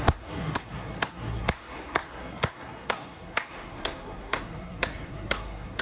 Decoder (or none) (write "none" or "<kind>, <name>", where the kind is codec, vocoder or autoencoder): codec, SNAC